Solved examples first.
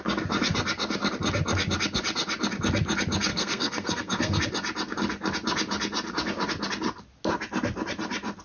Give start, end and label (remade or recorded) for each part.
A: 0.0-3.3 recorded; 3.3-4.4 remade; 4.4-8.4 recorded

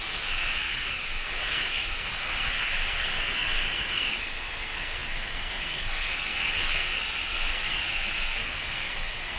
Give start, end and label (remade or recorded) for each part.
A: 0.0-9.4 remade

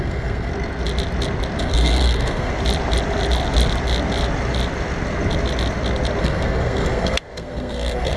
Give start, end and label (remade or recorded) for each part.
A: 0.0-0.5 remade; 0.5-1.6 recorded; 1.6-2.5 remade; 2.5-6.2 recorded; 6.2-8.2 remade

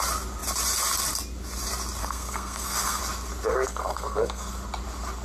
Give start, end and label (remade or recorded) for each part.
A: 0.0-2.0 recorded; 2.0-3.0 remade; 3.0-3.5 recorded; 3.5-4.5 remade; 4.5-5.2 recorded

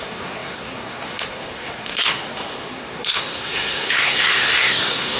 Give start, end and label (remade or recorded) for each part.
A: 0.0-5.2 remade

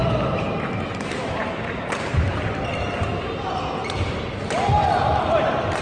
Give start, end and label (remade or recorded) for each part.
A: 0.0-5.8 recorded

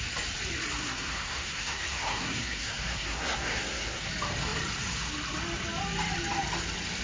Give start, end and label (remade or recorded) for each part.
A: 0.0-0.8 recorded; 0.8-4.1 remade; 4.1-7.0 recorded